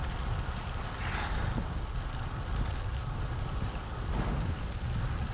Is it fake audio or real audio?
real